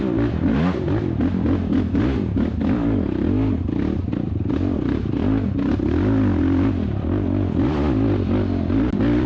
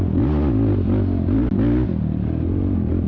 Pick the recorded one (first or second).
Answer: second